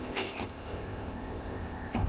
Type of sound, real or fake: fake